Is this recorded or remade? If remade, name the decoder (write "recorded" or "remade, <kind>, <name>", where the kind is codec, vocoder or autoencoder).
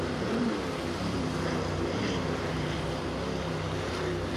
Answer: remade, vocoder, BigVGAN v2